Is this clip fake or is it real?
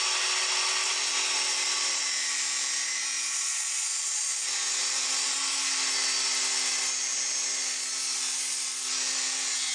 real